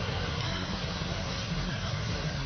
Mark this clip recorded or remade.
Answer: remade